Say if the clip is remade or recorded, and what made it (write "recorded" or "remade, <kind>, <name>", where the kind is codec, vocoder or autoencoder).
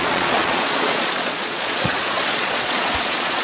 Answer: remade, vocoder, Vocos